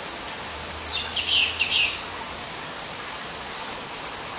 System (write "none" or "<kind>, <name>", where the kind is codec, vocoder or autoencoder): none